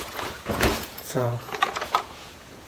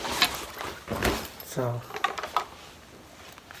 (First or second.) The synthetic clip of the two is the first